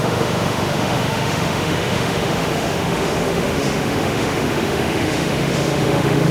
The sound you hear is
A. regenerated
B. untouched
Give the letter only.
A